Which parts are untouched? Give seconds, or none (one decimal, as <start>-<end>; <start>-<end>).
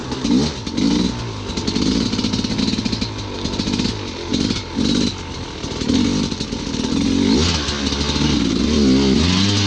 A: 0.0-9.7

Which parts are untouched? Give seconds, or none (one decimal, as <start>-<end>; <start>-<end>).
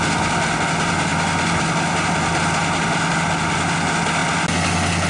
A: 0.0-5.1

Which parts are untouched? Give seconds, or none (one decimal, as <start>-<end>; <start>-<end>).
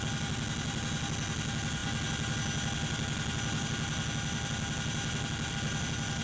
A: 0.0-6.2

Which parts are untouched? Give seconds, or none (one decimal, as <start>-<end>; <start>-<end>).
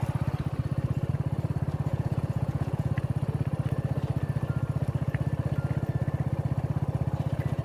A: 0.0-1.9; 2.9-7.6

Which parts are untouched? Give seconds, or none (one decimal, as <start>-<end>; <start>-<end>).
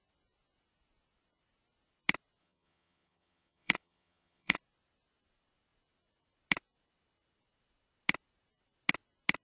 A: 0.0-2.4; 4.6-9.4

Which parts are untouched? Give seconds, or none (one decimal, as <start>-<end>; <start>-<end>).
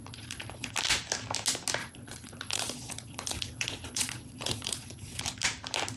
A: 0.7-1.8; 5.2-6.0